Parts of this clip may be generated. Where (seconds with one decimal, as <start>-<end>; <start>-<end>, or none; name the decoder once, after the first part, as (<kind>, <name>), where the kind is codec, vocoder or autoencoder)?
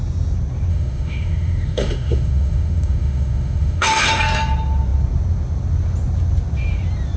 0.7-4.2 (autoencoder, DAC-VAE)